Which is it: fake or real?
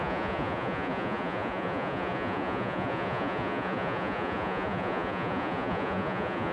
fake